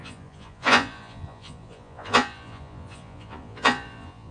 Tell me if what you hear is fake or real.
fake